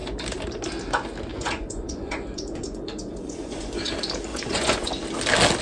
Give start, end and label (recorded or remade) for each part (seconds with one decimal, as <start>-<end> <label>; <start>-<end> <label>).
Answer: 0.0-1.3 recorded; 1.3-3.9 remade; 3.9-4.3 recorded; 4.3-4.9 remade; 4.9-5.6 recorded